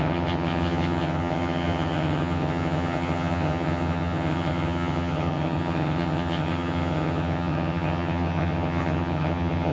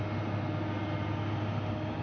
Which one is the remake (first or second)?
first